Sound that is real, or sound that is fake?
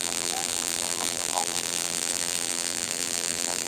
fake